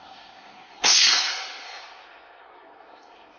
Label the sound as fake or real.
fake